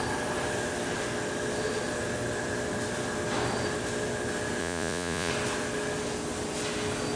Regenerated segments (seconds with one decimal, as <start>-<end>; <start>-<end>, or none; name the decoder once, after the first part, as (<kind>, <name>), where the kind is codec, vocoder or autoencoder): 4.6-5.3 (vocoder, Vocos)